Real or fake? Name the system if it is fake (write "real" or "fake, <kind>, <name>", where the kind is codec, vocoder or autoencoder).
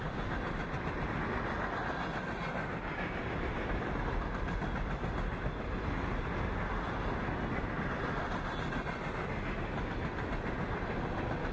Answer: real